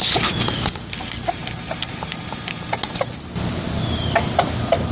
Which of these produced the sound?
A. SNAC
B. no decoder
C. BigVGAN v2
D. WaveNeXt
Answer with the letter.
B